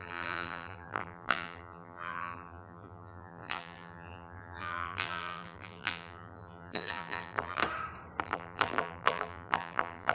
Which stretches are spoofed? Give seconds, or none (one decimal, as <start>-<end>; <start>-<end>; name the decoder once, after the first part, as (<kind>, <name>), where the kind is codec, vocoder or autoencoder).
0.0-7.6 (vocoder, BigVGAN v2); 8.2-10.1